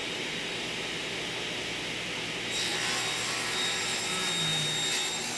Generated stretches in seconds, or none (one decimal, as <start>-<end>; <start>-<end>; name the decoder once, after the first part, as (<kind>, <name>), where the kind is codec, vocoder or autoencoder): 0.0-1.3 (vocoder, BigVGAN v2)